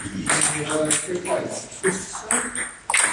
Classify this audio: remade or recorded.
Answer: recorded